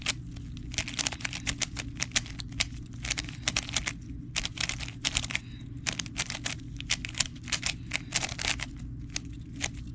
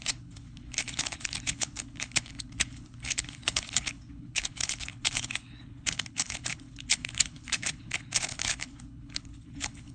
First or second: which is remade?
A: second